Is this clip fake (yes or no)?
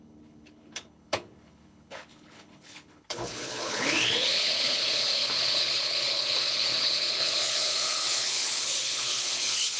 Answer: yes